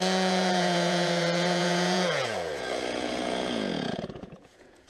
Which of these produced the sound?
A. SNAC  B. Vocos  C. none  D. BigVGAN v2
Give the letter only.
B